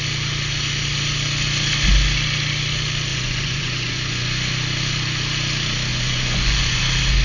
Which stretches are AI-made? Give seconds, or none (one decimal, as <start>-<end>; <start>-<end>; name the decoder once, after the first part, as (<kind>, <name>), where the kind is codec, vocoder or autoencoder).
3.1-4.5 (vocoder, Vocos); 5.9-6.8